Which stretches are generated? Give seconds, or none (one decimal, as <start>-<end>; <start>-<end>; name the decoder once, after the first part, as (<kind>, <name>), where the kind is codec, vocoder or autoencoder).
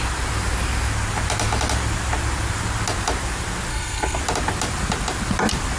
3.7-4.2 (codec, SNAC)